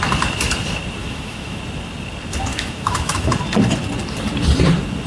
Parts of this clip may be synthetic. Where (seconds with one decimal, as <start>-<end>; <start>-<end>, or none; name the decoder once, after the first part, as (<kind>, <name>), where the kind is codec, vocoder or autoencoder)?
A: 1.0-1.6 (autoencoder, DAC-VAE); 2.5-3.3